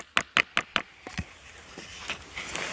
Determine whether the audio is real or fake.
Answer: real